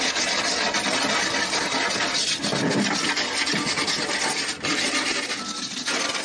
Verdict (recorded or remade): recorded